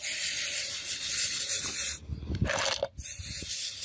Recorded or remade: recorded